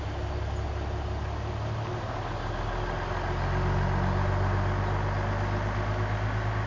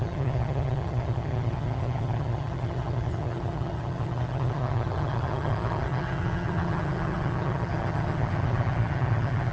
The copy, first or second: second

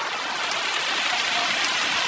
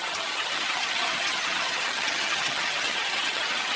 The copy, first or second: second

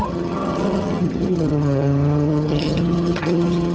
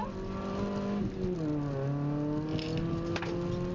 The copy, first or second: first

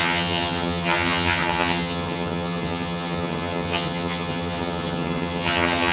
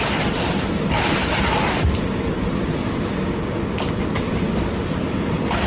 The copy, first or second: first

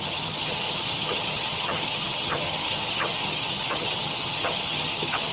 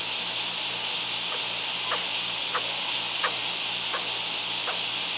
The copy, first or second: first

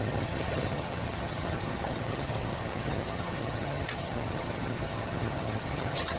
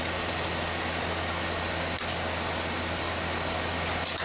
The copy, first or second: first